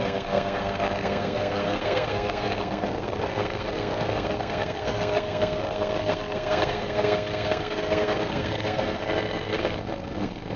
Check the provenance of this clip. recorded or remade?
remade